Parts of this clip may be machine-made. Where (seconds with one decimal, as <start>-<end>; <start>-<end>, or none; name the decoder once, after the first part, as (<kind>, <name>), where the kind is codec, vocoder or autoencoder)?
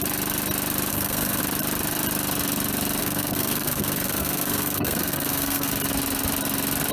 0.9-1.4 (codec, SNAC); 3.0-5.7